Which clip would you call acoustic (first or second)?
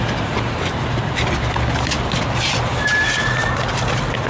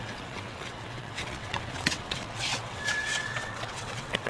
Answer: first